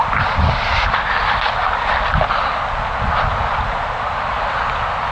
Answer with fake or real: real